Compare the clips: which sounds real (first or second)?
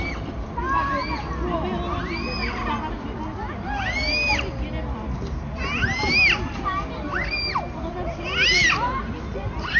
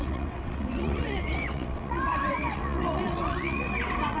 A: first